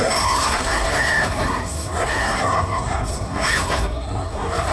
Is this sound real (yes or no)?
no